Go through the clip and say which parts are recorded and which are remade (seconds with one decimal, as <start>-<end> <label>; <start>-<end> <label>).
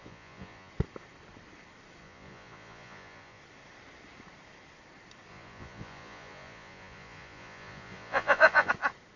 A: 0.0-0.7 remade; 0.7-2.0 recorded; 2.0-3.4 remade; 3.4-5.3 recorded; 5.3-8.7 remade; 8.7-9.2 recorded